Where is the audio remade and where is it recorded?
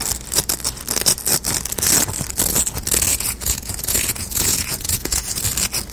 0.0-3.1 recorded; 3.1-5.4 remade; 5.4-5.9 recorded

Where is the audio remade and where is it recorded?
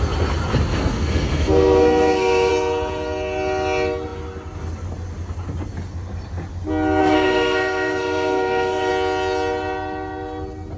0.0-0.7 recorded; 0.7-2.5 remade; 2.5-7.0 recorded; 7.0-8.9 remade; 8.9-10.8 recorded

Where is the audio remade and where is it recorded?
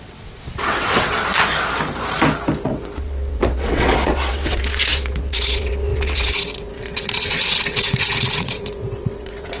0.0-1.2 remade; 1.2-2.6 recorded; 2.6-9.6 remade